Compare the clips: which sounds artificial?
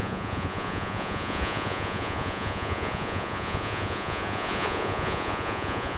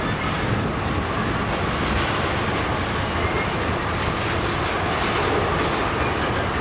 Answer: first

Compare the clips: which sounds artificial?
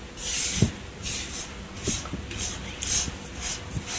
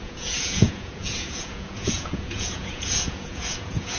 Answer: second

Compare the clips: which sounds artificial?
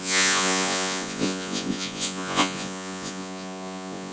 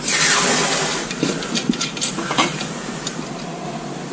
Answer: first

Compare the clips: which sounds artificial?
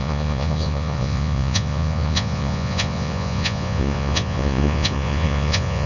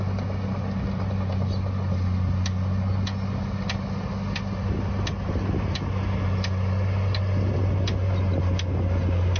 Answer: first